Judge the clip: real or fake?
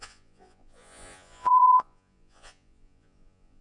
fake